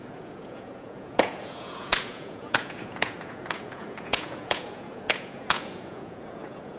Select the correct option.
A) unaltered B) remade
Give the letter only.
B